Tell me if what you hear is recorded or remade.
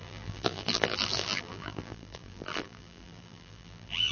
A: remade